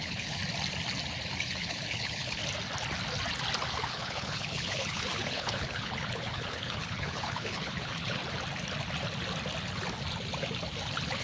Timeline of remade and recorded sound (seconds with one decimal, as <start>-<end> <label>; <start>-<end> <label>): 0.0-0.4 remade; 0.4-1.4 recorded; 1.4-2.4 remade; 2.4-3.7 recorded; 3.7-8.2 remade; 8.2-11.2 recorded